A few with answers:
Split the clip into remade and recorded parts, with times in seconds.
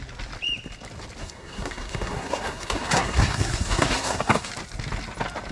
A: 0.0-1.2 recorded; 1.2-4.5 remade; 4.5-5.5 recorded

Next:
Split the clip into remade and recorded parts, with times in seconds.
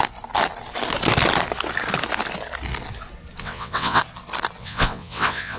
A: 0.0-3.4 recorded; 3.4-4.0 remade; 4.0-4.6 recorded; 4.6-5.6 remade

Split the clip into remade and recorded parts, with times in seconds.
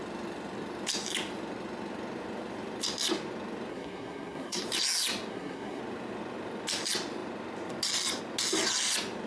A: 0.0-3.7 recorded; 3.7-4.6 remade; 4.6-5.3 recorded; 5.3-5.8 remade; 5.8-9.3 recorded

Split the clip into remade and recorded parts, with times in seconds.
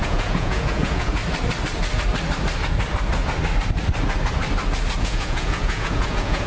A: 0.0-1.2 remade; 1.2-5.0 recorded; 5.0-6.5 remade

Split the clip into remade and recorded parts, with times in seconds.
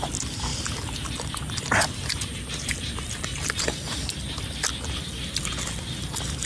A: 0.0-0.5 recorded; 0.5-4.4 remade; 4.4-6.5 recorded